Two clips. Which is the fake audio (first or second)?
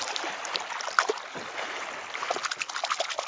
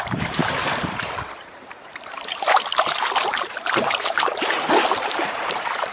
second